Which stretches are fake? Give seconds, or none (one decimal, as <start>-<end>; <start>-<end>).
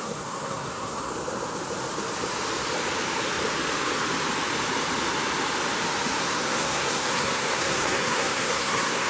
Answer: 0.0-1.1; 6.2-9.1